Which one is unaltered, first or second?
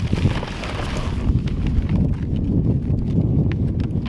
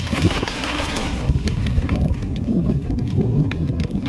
first